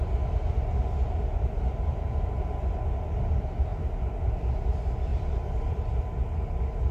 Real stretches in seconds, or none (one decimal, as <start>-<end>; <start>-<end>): 0.0-1.9; 2.9-5.1; 5.8-6.9